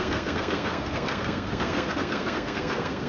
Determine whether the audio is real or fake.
fake